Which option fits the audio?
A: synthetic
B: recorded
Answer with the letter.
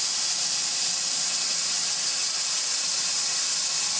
B